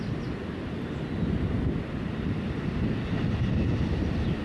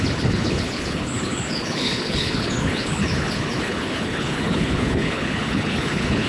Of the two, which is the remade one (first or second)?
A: second